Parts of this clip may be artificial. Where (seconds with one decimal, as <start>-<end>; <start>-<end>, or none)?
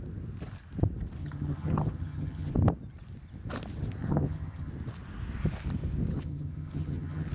1.2-2.5; 4.0-4.7; 6.1-7.3